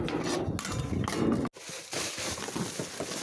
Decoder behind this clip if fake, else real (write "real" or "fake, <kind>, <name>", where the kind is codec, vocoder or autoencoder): real